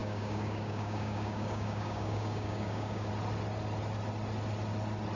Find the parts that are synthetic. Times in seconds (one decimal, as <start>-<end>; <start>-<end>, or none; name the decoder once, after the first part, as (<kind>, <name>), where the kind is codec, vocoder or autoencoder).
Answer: 0.0-3.1 (codec, DAC)